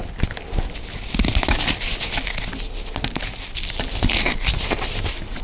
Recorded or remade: recorded